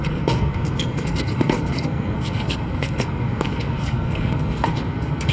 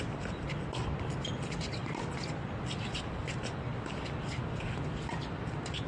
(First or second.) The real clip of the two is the second